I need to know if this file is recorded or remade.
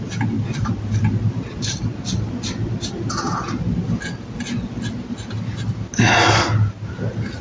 recorded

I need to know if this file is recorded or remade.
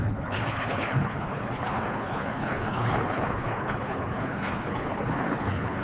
remade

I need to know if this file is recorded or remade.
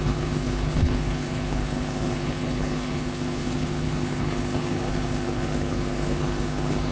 remade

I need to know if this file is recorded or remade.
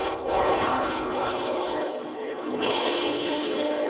remade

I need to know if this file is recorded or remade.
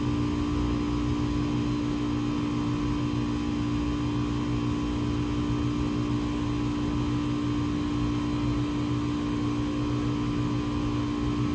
recorded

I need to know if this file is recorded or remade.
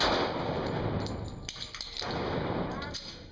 recorded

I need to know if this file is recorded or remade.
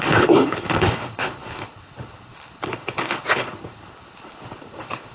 remade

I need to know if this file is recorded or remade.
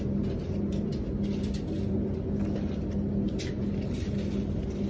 recorded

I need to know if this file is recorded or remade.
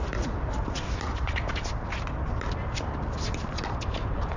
recorded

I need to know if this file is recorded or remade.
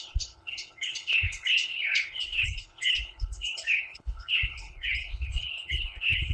remade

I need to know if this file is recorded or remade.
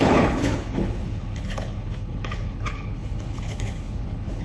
remade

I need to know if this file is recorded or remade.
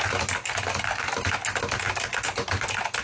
recorded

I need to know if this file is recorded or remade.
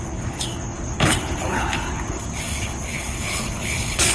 remade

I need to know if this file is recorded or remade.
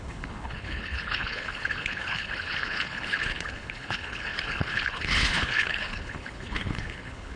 remade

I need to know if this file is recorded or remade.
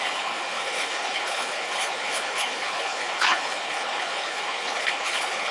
remade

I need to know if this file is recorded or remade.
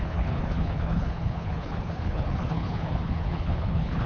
remade